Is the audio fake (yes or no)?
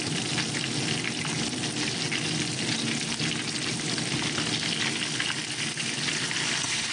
no